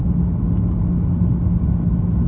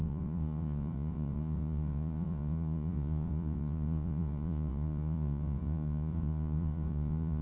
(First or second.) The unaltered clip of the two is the first